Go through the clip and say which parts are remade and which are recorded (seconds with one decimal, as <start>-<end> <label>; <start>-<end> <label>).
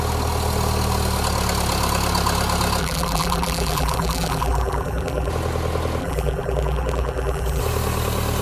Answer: 0.0-2.8 recorded; 2.8-5.3 remade; 5.3-6.0 recorded; 6.0-7.6 remade; 7.6-8.4 recorded